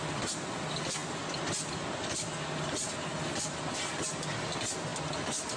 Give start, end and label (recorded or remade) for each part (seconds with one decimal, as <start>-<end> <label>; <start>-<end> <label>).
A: 0.0-5.6 recorded